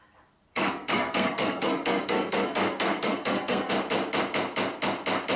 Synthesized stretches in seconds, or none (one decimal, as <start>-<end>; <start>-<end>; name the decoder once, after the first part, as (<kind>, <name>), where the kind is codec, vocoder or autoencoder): 0.5-3.7 (codec, SNAC)